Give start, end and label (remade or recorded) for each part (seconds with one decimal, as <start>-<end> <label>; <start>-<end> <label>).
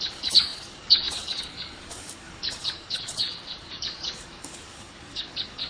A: 0.0-5.7 remade